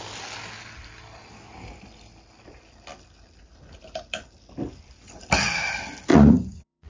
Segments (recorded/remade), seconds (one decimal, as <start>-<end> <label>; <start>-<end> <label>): 0.0-6.1 recorded; 6.1-6.9 remade